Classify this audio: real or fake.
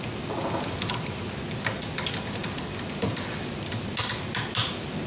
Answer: real